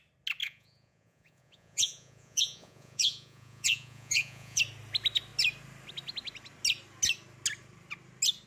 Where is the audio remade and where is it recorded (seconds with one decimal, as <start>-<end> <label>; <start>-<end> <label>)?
0.0-0.4 recorded; 0.4-4.6 remade; 4.6-8.5 recorded